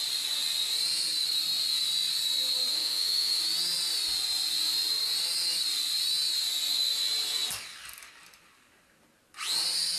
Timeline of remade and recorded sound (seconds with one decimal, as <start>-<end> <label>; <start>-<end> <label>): 0.0-2.7 recorded; 2.7-3.4 remade; 3.4-10.0 recorded